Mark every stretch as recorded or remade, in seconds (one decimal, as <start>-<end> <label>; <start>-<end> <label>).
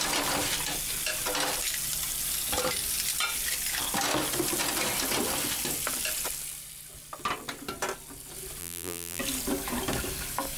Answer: 0.0-8.6 recorded; 8.6-9.2 remade; 9.2-10.6 recorded